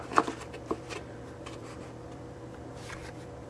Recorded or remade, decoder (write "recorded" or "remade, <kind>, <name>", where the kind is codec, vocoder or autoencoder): remade, vocoder, BigVGAN v2